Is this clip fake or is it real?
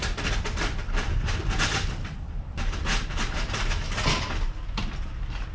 fake